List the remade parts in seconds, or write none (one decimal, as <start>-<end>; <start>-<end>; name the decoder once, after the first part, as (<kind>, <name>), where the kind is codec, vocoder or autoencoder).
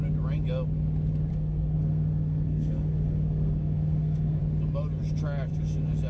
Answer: 1.3-4.4 (codec, SNAC)